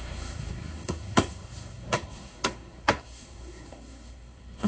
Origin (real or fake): fake